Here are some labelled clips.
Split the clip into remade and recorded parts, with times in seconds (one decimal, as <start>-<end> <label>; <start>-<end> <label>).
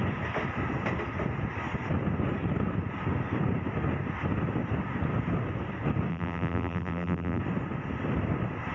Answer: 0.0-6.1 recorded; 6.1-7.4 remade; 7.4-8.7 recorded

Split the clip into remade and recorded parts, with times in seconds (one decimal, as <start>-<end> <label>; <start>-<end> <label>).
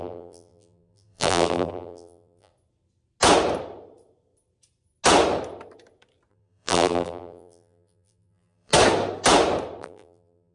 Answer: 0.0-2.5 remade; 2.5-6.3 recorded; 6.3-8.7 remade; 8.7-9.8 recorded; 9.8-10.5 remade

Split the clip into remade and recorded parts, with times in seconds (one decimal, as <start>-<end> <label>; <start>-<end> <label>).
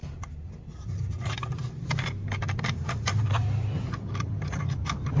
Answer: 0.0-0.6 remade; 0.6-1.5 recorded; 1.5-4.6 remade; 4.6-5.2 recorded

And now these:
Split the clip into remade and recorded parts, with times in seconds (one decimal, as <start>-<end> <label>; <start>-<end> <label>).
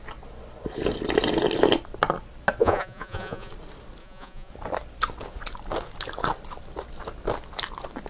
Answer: 0.0-2.6 recorded; 2.6-3.5 remade; 3.5-4.0 recorded; 4.0-4.5 remade; 4.5-8.1 recorded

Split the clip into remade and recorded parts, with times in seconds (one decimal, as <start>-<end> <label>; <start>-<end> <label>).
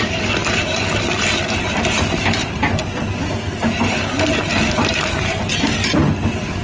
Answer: 0.0-6.6 recorded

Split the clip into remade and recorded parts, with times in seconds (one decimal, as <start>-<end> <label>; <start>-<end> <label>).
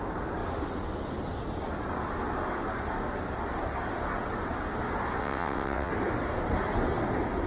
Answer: 0.0-5.2 recorded; 5.2-5.9 remade; 5.9-7.5 recorded